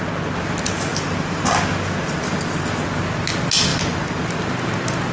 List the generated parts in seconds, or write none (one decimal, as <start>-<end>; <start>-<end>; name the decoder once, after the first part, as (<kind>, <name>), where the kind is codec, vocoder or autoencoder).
0.9-2.8 (vocoder, BigVGAN v2); 3.7-4.3